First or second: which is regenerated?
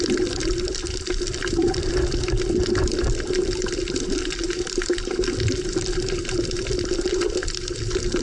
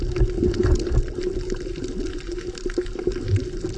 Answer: first